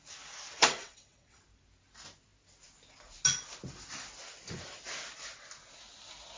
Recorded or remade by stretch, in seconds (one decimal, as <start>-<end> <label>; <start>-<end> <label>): 0.0-0.6 recorded; 0.6-1.4 remade; 1.4-6.4 recorded